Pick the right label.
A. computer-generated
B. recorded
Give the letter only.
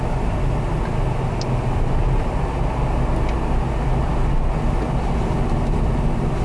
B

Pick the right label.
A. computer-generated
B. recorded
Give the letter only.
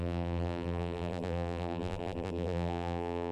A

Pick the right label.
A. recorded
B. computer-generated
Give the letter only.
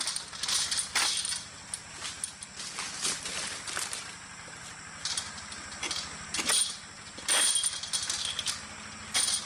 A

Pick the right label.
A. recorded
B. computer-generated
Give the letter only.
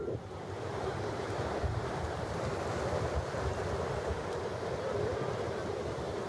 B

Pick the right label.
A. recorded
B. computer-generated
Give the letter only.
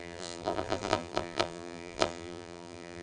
B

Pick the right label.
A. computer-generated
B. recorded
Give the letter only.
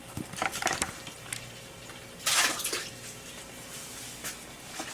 B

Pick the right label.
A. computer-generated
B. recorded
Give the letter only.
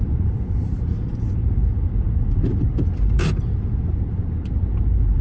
A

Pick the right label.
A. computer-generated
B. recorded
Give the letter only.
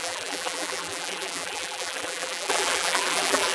A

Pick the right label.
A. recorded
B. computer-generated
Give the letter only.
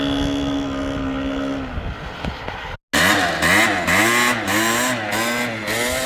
A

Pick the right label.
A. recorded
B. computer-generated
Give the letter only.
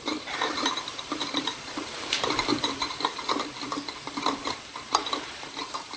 B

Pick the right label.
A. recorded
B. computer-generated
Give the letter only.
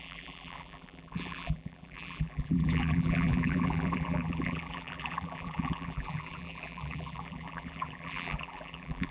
B